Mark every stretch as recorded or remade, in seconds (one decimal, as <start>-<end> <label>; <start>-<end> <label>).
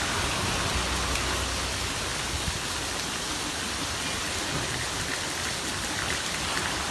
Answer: 0.0-6.9 recorded